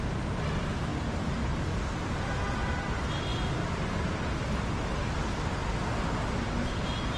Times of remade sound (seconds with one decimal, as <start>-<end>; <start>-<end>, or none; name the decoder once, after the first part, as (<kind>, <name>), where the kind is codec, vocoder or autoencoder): none